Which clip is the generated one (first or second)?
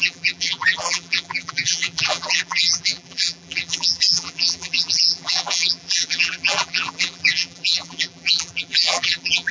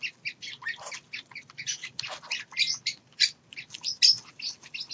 first